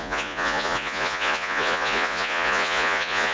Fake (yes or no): yes